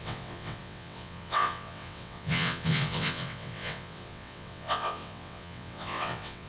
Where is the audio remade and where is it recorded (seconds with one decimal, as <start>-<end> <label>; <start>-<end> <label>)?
0.0-6.5 remade